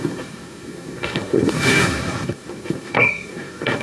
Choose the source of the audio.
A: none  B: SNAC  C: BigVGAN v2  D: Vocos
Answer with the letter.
B